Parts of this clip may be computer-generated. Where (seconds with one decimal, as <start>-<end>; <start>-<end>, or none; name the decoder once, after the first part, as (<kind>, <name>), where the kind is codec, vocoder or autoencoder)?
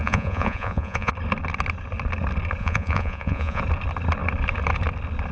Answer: 0.0-1.1 (vocoder, Vocos); 2.6-3.6